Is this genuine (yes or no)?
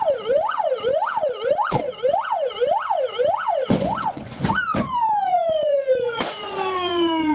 no